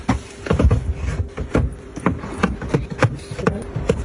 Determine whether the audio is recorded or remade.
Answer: recorded